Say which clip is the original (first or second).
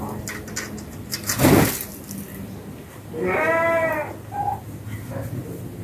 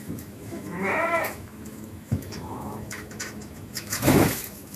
first